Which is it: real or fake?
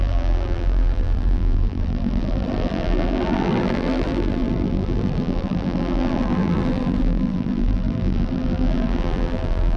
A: fake